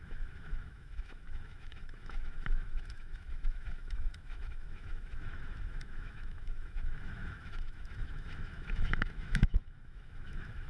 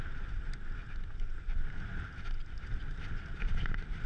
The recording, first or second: second